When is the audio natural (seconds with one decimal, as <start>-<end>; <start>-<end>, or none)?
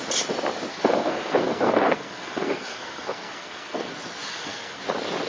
0.0-0.7; 3.9-4.3; 4.8-5.3